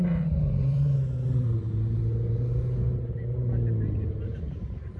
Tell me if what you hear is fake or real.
real